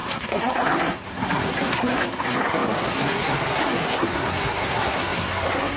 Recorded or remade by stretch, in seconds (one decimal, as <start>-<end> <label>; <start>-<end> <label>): 0.0-5.8 remade